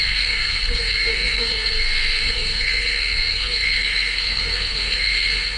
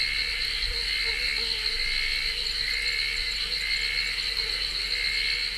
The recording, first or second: second